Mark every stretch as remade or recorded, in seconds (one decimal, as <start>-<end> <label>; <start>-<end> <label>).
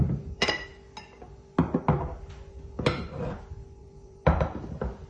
0.0-0.7 remade; 0.7-3.8 recorded; 3.8-5.1 remade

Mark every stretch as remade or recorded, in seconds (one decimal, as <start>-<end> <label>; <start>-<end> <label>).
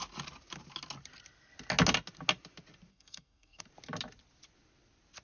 0.0-2.9 recorded; 2.9-3.6 remade; 3.6-5.2 recorded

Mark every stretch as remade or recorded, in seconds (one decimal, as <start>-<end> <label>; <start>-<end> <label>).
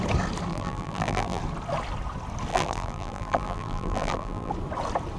0.0-0.5 recorded; 0.5-1.4 remade; 1.4-2.5 recorded; 2.5-4.5 remade; 4.5-5.2 recorded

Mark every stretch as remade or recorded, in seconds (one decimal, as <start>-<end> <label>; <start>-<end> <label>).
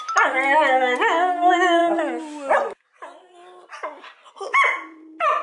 0.0-5.4 recorded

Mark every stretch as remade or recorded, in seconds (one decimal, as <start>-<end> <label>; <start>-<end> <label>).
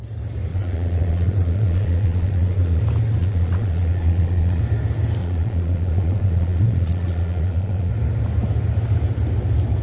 0.0-0.5 recorded; 0.5-2.8 remade; 2.8-3.2 recorded; 3.2-4.6 remade; 4.6-5.2 recorded; 5.2-7.9 remade; 7.9-9.8 recorded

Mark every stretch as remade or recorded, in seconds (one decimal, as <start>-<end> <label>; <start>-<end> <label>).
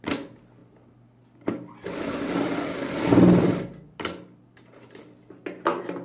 0.0-6.0 recorded